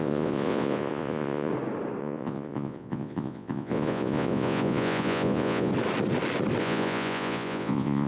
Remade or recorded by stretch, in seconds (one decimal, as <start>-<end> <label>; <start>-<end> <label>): 0.0-1.5 remade; 1.5-2.0 recorded; 2.0-5.7 remade; 5.7-6.6 recorded; 6.6-8.1 remade